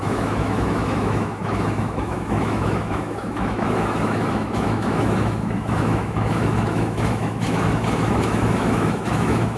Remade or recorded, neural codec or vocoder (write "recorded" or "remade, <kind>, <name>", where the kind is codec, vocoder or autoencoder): remade, autoencoder, DAC-VAE